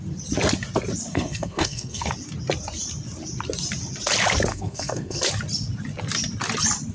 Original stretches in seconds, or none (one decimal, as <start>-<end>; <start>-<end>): 0.0-1.1; 2.1-4.5; 5.2-6.9